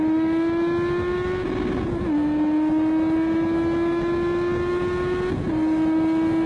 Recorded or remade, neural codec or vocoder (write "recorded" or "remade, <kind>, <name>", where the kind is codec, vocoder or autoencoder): recorded